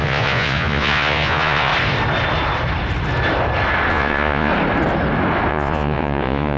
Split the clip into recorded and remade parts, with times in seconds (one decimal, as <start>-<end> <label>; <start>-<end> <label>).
0.0-1.7 remade; 1.7-3.9 recorded; 3.9-4.5 remade; 4.5-5.5 recorded; 5.5-6.6 remade

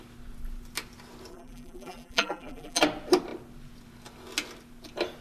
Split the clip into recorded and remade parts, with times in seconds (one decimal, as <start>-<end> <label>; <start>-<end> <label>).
0.0-1.3 recorded; 1.3-2.8 remade; 2.8-5.2 recorded

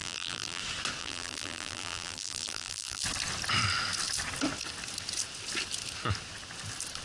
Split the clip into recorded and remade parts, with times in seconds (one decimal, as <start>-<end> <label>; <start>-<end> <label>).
0.0-0.6 remade; 0.6-1.0 recorded; 1.0-3.0 remade; 3.0-7.0 recorded

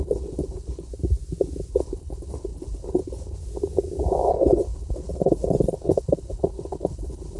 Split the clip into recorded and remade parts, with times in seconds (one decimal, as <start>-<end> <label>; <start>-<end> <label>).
0.0-0.9 remade; 0.9-1.7 recorded; 1.7-3.4 remade; 3.4-4.3 recorded; 4.3-7.4 remade

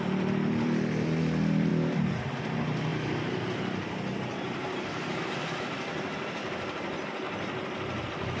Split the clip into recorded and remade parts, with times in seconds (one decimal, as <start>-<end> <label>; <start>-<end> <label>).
0.0-8.4 remade

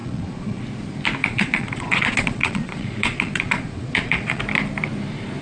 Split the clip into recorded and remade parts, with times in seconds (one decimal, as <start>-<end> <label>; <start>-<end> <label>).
0.0-0.6 remade; 0.6-1.2 recorded; 1.2-4.4 remade; 4.4-5.4 recorded

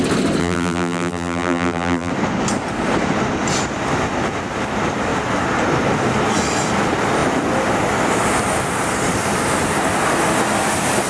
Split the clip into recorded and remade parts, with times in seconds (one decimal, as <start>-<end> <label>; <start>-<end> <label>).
0.0-0.4 recorded; 0.4-2.1 remade; 2.1-11.1 recorded